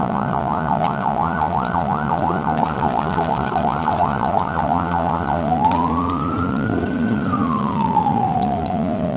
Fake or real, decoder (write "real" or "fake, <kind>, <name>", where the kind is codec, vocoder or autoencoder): fake, vocoder, Vocos